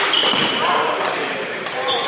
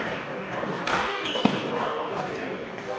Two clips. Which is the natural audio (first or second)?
first